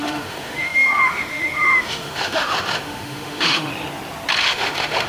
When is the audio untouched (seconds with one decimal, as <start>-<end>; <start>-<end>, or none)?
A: 3.7-4.4